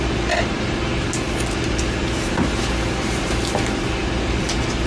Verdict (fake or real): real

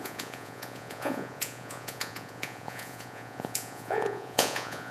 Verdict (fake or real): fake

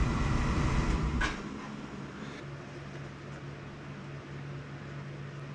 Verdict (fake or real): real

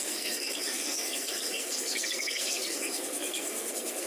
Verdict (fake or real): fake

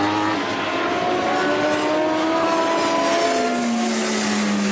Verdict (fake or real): real